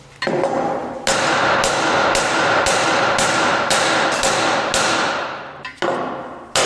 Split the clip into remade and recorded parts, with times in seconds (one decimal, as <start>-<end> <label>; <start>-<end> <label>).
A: 0.0-6.7 recorded